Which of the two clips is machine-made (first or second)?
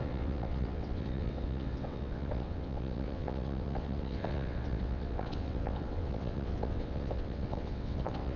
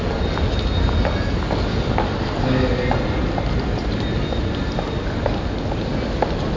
first